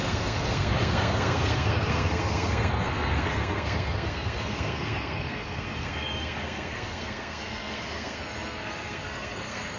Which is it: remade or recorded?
remade